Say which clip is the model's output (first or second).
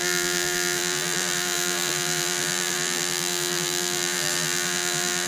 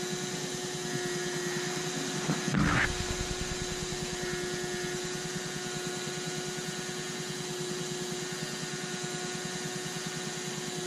first